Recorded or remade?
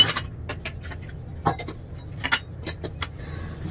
recorded